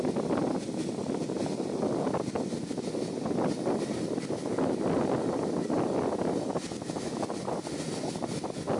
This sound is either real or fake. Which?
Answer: real